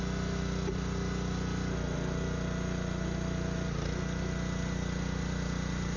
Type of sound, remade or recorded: recorded